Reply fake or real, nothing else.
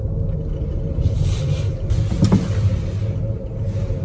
real